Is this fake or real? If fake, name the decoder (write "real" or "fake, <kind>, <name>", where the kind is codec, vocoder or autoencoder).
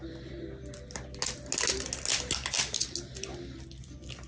real